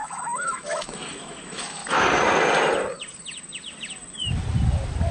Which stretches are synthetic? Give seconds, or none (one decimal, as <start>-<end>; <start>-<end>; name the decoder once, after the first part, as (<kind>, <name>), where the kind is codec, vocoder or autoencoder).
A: 0.0-1.8 (autoencoder, DAC-VAE)